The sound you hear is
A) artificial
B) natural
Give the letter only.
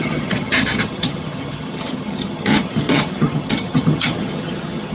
A